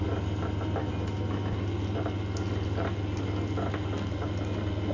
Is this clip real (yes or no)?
yes